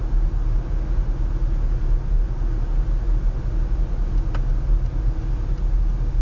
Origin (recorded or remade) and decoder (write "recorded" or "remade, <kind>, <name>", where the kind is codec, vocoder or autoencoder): recorded